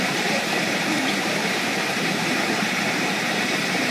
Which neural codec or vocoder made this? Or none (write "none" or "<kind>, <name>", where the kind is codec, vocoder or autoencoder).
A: vocoder, BigVGAN v2